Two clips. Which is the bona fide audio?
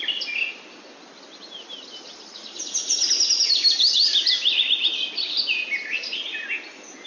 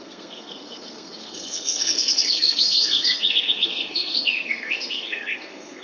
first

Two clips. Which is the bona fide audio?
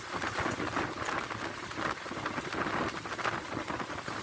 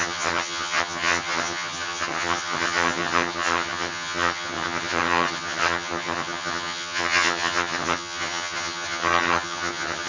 first